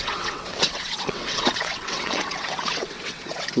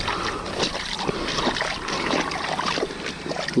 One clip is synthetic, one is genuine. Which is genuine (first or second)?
second